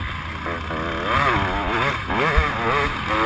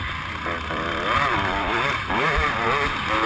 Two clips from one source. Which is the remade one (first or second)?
second